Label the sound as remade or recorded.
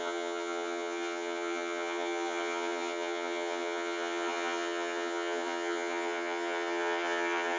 remade